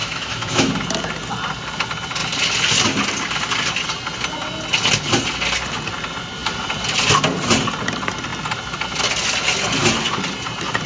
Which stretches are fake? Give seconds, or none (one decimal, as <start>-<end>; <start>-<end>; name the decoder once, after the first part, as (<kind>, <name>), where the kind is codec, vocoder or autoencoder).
0.0-0.7 (autoencoder, DAC-VAE)